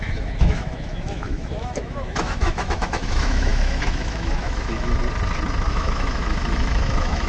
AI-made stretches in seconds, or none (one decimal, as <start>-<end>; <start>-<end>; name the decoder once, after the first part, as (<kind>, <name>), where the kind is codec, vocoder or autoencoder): 0.0-5.0 (autoencoder, DAC-VAE); 5.7-7.3

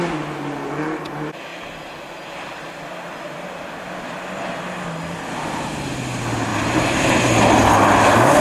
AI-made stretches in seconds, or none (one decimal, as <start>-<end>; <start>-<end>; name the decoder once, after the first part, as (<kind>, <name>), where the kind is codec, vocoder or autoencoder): none

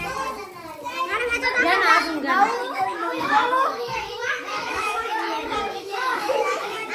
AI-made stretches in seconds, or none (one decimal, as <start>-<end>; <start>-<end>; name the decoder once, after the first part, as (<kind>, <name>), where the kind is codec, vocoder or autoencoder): 2.6-6.9 (autoencoder, DAC-VAE)

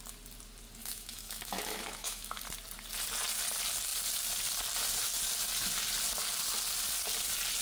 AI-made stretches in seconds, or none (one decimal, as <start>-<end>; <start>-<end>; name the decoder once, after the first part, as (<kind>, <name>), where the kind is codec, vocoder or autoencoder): 0.8-2.4 (autoencoder, DAC-VAE)

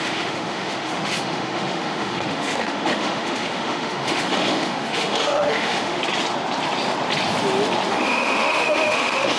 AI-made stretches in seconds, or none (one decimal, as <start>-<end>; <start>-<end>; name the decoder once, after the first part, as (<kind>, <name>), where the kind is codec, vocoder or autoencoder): 0.0-6.0 (autoencoder, DAC-VAE); 7.9-9.4

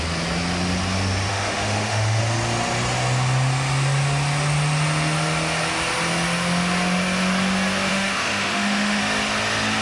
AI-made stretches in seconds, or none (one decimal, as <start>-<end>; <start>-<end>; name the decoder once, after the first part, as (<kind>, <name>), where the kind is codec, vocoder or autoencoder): 1.3-2.2 (autoencoder, DAC-VAE); 7.9-9.0